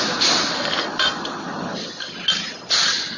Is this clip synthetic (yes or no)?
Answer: no